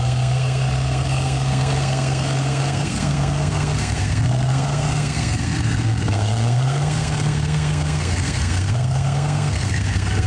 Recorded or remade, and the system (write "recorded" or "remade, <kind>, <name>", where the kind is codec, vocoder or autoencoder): remade, codec, SNAC